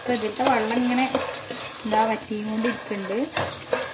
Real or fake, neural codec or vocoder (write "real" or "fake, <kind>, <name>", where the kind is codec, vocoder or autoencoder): real